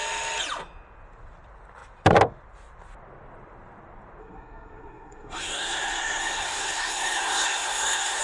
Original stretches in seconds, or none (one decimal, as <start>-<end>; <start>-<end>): 0.0-4.2